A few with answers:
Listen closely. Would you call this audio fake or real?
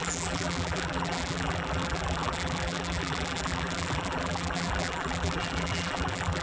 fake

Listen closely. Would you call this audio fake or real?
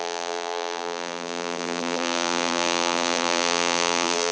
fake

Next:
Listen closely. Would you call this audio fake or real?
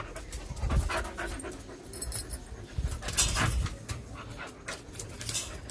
real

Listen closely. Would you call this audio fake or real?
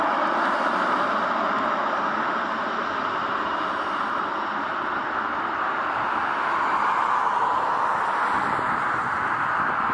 real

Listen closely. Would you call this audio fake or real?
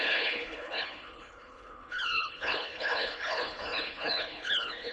fake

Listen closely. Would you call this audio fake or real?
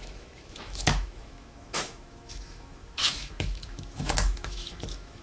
fake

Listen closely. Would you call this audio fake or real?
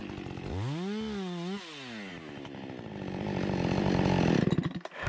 real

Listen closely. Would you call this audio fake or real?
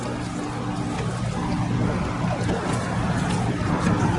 real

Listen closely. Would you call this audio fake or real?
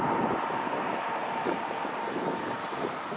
fake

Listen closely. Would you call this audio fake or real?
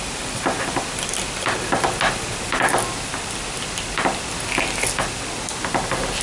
real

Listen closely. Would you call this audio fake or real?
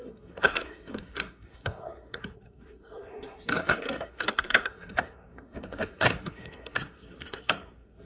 fake